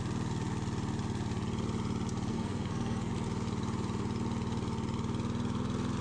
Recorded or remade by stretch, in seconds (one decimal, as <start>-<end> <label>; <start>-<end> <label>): 0.0-2.3 recorded; 2.3-3.1 remade; 3.1-6.0 recorded